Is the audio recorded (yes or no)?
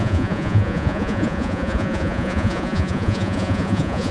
no